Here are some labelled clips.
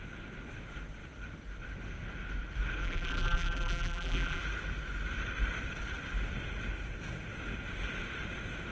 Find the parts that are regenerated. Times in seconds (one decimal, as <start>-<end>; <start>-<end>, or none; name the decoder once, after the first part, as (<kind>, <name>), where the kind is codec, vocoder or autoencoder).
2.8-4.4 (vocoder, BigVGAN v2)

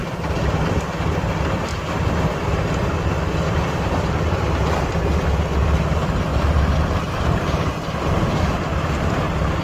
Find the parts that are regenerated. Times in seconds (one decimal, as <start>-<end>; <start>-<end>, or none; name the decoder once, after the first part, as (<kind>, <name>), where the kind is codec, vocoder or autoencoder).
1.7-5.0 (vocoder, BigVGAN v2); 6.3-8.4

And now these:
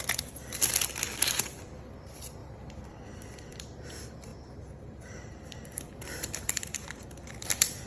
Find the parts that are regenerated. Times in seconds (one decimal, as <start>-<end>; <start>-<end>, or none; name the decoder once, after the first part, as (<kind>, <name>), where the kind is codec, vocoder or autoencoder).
0.0-0.4 (vocoder, BigVGAN v2); 1.3-4.3; 4.8-7.9

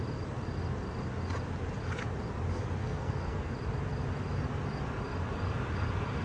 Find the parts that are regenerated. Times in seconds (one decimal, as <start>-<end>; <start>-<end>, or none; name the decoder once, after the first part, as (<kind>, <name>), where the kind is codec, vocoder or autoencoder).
2.8-3.5 (codec, SNAC)